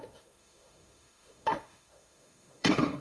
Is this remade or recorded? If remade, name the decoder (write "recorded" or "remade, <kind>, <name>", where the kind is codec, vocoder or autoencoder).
remade, autoencoder, DAC-VAE